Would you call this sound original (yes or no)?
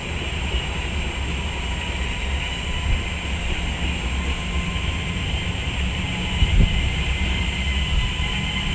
yes